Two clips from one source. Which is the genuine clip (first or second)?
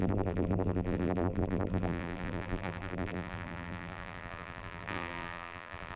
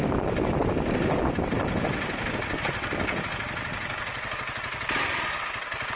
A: second